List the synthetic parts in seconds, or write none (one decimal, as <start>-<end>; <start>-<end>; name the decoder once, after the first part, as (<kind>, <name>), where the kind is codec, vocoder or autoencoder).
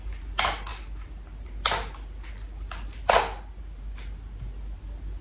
none